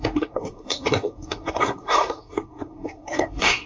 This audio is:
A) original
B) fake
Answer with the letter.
B